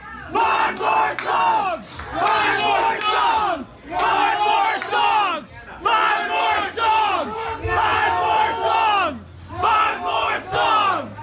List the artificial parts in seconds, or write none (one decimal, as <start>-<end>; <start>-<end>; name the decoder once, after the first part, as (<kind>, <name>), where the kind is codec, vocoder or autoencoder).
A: none